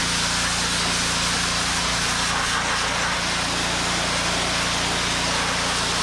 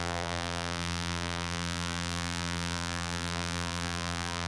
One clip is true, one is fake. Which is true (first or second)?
first